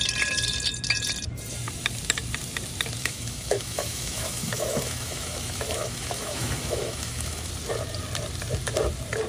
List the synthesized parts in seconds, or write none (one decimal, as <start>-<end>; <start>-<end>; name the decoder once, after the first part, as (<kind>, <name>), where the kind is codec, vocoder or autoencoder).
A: 3.0-7.5 (autoencoder, DAC-VAE)